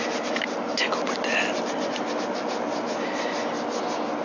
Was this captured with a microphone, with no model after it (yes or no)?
yes